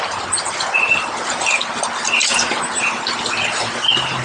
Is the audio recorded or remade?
recorded